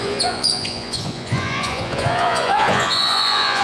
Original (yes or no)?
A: no